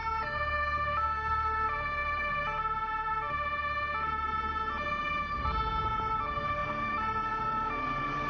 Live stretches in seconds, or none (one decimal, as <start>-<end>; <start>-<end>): 6.6-7.4